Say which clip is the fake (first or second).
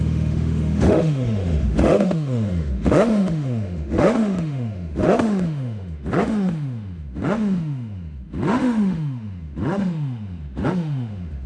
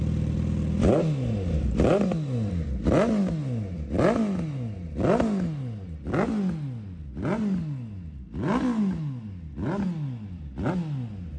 first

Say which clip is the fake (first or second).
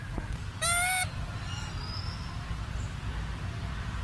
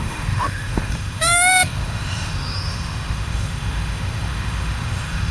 second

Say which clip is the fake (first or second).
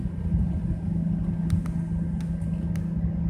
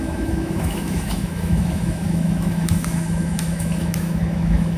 second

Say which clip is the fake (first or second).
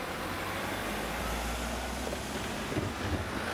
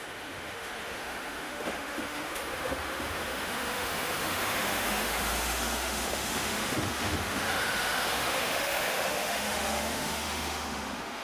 second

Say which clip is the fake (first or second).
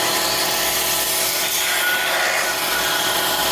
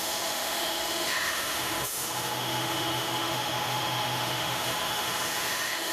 second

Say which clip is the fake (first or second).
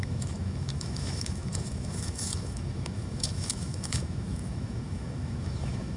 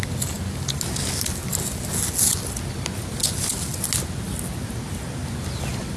first